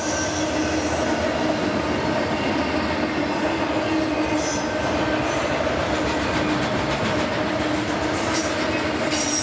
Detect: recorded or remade recorded